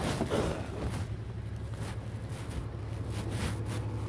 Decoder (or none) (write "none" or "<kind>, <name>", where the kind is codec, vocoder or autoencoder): none